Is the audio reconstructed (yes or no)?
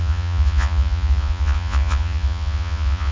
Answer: yes